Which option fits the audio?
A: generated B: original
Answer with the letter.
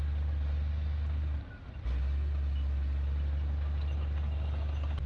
B